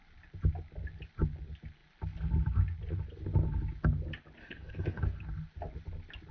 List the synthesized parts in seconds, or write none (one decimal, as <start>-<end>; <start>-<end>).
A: 4.4-5.0